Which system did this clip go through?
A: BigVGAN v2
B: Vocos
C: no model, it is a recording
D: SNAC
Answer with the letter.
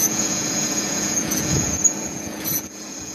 B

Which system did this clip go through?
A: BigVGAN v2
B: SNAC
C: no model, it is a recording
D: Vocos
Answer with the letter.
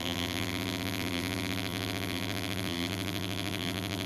A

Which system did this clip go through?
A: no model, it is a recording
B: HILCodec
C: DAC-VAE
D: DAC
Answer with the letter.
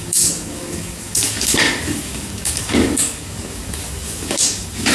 D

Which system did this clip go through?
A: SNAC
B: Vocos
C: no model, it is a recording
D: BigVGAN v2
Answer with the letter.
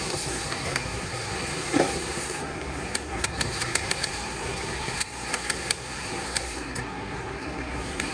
A